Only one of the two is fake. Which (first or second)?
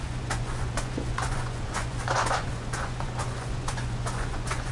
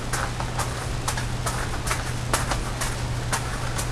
first